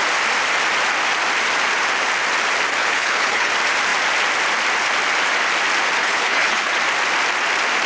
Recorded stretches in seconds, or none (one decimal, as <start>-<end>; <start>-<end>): 0.0-2.8; 3.5-6.0; 6.7-7.9